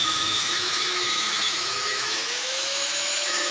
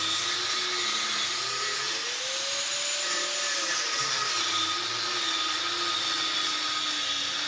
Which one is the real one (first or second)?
second